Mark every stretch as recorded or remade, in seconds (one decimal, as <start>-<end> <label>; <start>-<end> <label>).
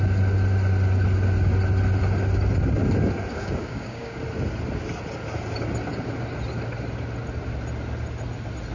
0.0-3.3 recorded; 3.3-4.2 remade; 4.2-8.7 recorded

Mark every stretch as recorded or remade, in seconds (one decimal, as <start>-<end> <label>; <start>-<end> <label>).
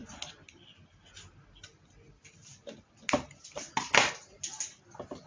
0.0-5.3 recorded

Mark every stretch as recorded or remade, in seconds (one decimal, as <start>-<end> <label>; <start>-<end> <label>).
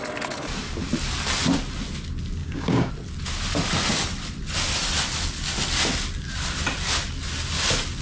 0.0-2.4 recorded; 2.4-2.9 remade; 2.9-8.0 recorded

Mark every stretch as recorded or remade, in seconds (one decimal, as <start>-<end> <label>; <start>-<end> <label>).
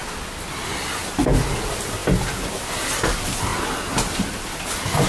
0.0-5.1 recorded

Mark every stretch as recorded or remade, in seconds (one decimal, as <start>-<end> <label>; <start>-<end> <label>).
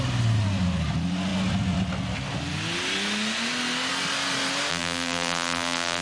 0.0-4.7 recorded; 4.7-6.0 remade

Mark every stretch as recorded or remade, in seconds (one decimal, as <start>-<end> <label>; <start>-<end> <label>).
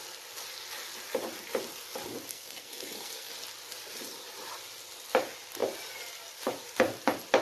0.0-2.3 recorded; 2.3-3.3 remade; 3.3-7.4 recorded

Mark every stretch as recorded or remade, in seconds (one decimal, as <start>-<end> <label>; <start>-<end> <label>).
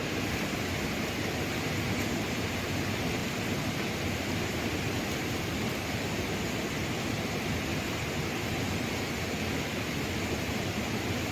0.0-7.7 recorded; 7.7-8.5 remade; 8.5-11.3 recorded